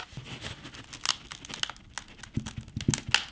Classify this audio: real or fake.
real